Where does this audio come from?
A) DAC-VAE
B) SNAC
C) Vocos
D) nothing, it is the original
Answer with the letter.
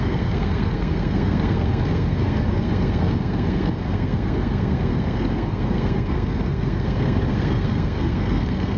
B